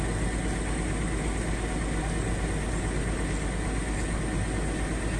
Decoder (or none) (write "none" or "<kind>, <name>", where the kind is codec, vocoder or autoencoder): none